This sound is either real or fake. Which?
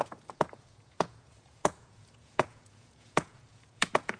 fake